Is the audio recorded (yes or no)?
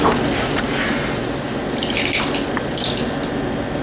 yes